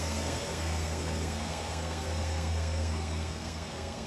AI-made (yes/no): yes